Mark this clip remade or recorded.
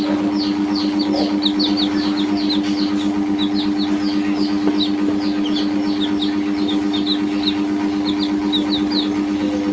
recorded